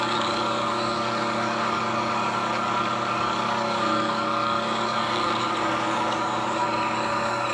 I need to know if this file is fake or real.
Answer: fake